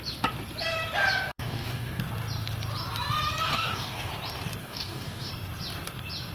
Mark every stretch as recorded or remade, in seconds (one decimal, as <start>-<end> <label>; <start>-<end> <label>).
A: 0.0-1.3 recorded; 1.3-2.0 remade; 2.0-3.5 recorded; 3.5-4.1 remade; 4.1-4.6 recorded; 4.6-5.3 remade; 5.3-6.3 recorded